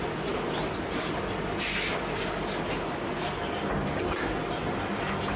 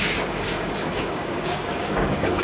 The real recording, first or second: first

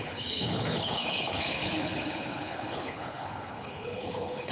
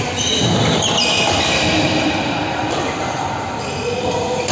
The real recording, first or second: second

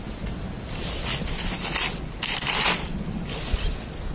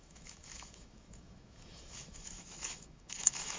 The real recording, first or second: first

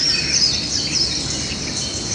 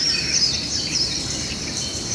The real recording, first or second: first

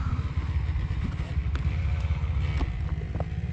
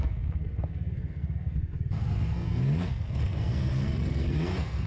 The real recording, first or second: first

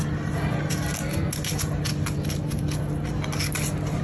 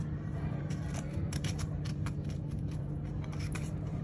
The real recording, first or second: first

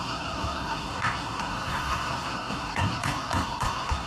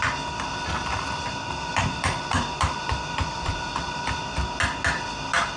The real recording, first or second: second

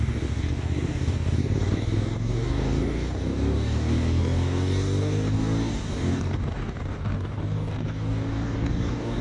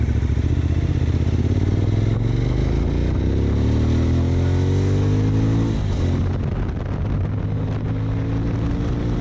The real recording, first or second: second